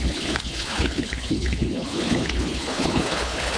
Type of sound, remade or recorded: remade